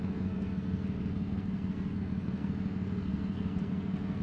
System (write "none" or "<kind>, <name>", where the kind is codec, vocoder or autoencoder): codec, SNAC